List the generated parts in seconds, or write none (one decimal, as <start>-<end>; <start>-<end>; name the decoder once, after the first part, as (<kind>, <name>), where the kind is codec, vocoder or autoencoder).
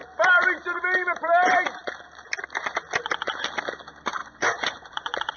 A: 4.2-5.4 (vocoder, Vocos)